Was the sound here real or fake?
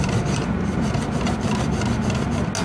real